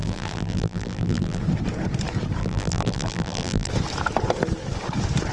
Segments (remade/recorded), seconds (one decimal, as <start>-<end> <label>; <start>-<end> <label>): 0.0-1.4 remade; 1.4-2.4 recorded; 2.4-3.7 remade; 3.7-5.3 recorded

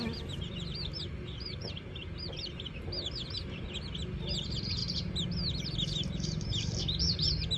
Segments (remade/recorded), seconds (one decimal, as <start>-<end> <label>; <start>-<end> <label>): 0.0-4.8 remade; 4.8-7.0 recorded; 7.0-7.6 remade

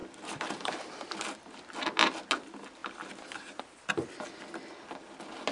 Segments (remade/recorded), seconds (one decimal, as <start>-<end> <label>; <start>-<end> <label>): 0.0-1.1 remade; 1.1-5.5 recorded

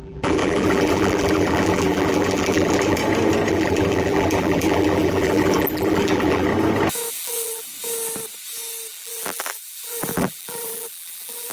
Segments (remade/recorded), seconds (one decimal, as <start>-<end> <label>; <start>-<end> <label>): 0.0-3.0 remade; 3.0-3.5 recorded; 3.5-6.5 remade; 6.5-7.1 recorded; 7.1-7.7 remade; 7.7-8.9 recorded; 8.9-11.5 remade

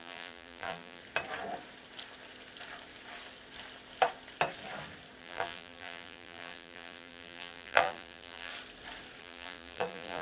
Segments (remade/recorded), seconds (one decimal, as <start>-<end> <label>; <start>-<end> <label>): 0.0-1.0 remade; 1.0-5.2 recorded; 5.2-8.5 remade; 8.5-9.2 recorded; 9.2-10.2 remade

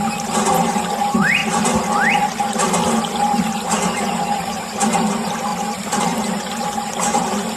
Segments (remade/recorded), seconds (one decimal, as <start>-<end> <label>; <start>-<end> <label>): 0.0-7.6 recorded

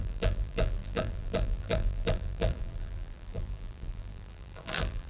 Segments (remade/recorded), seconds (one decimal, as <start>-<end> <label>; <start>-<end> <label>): 0.0-5.1 remade